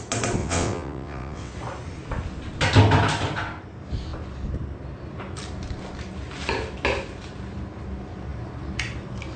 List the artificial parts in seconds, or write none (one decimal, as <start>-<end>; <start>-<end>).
0.4-1.5